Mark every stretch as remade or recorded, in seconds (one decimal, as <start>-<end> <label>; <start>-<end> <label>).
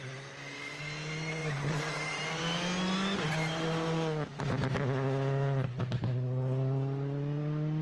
0.0-1.4 recorded; 1.4-2.4 remade; 2.4-7.8 recorded